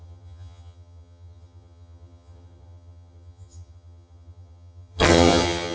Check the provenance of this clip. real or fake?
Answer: fake